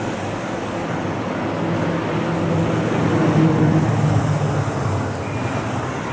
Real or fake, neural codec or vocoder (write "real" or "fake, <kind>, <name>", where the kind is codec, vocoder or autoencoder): real